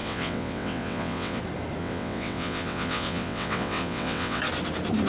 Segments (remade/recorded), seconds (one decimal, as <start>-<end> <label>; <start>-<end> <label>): 0.0-1.4 remade; 1.4-1.8 recorded; 1.8-4.4 remade; 4.4-5.1 recorded